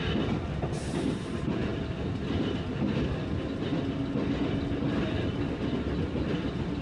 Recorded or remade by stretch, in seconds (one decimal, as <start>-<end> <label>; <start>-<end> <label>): 0.0-6.8 recorded